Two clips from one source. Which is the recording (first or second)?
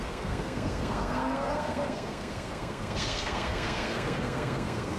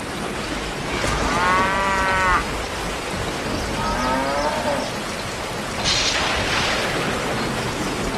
second